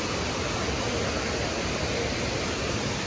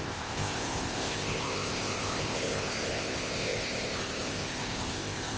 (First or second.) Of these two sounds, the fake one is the second